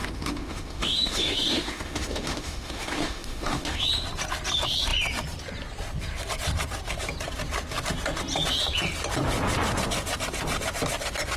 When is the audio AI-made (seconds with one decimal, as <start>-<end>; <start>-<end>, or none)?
0.0-3.8